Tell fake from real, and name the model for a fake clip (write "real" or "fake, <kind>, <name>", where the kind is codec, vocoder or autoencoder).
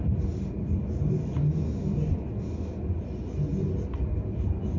real